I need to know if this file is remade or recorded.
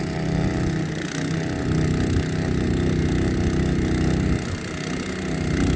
recorded